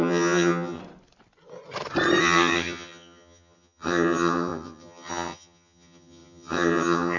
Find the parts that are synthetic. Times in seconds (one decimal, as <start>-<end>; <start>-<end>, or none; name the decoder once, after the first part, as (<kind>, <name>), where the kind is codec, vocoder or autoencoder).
0.0-0.8 (vocoder, HiFi-GAN); 2.2-7.2